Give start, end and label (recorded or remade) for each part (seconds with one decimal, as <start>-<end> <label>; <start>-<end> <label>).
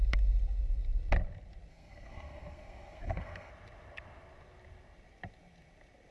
0.0-1.7 recorded; 1.7-3.5 remade; 3.5-6.1 recorded